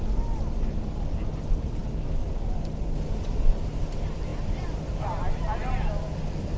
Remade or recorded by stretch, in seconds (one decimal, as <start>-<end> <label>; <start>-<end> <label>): 0.0-6.6 recorded